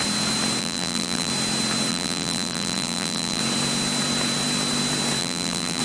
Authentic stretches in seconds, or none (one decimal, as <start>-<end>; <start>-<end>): 0.0-0.6; 1.3-1.9; 3.4-5.2